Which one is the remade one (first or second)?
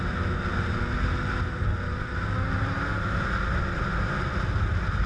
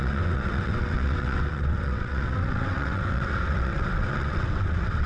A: second